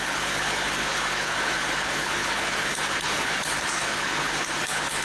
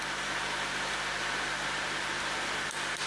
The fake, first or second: first